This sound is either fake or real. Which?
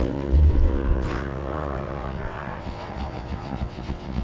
fake